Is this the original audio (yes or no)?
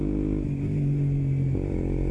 yes